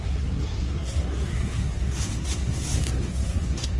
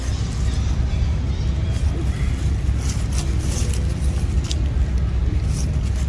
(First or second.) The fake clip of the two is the first